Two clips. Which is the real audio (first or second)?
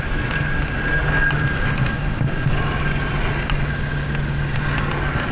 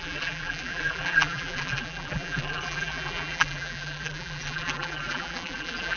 first